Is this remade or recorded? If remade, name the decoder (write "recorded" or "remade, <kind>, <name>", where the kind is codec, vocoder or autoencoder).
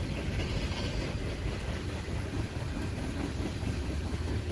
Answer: remade, vocoder, BigVGAN v2